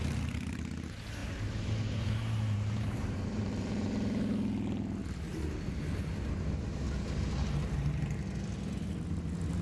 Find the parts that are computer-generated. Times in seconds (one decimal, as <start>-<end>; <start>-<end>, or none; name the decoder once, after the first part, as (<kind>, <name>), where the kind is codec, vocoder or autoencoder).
1.2-3.5 (vocoder, BigVGAN v2)